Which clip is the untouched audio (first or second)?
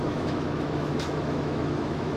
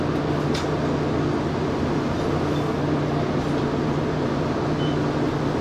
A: second